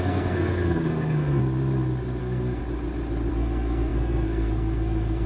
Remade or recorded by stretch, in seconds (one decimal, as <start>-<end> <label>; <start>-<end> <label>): 0.0-1.4 remade; 1.4-2.2 recorded; 2.2-2.6 remade; 2.6-3.3 recorded; 3.3-5.3 remade